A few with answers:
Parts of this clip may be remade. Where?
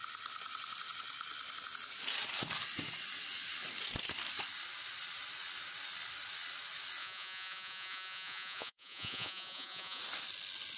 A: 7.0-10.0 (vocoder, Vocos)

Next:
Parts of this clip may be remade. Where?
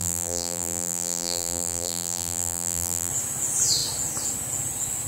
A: 0.0-3.1 (vocoder, BigVGAN v2)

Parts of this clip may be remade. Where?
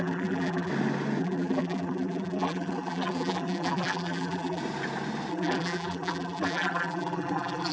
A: 0.0-0.7 (vocoder, BigVGAN v2); 1.2-4.6; 5.3-7.7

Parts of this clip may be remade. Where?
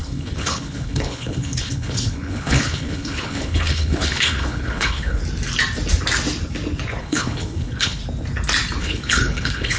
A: 0.0-5.2 (codec, HILCodec); 7.0-8.0; 8.8-9.8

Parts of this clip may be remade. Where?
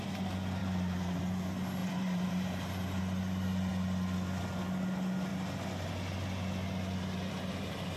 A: 0.6-1.2 (vocoder, BigVGAN v2); 1.8-3.0